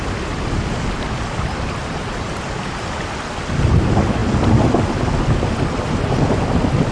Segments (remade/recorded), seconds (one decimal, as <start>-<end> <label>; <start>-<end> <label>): 0.0-1.8 recorded; 1.8-2.3 remade; 2.3-6.9 recorded